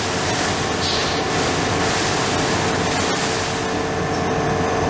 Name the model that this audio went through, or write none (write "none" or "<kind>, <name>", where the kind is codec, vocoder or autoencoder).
none